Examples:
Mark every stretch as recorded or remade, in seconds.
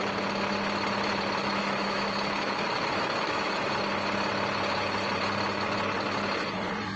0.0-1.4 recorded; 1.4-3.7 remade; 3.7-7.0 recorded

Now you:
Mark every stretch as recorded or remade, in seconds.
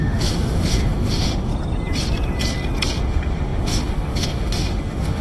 0.0-1.5 remade; 1.5-3.0 recorded; 3.0-5.2 remade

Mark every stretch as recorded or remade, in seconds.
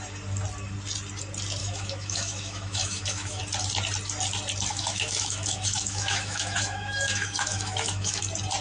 0.0-1.6 recorded; 1.6-3.4 remade; 3.4-4.7 recorded; 4.7-8.2 remade; 8.2-8.6 recorded